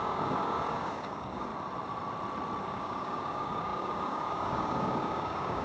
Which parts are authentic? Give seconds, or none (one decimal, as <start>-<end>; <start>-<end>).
1.5-2.6